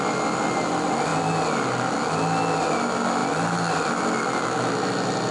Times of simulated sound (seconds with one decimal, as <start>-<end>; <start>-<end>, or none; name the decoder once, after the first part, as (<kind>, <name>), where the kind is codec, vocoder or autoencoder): none